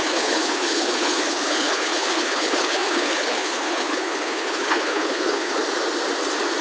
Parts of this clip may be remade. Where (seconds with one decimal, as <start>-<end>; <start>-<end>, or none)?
0.0-5.6